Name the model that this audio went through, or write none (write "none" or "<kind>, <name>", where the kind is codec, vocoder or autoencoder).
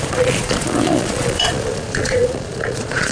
vocoder, Vocos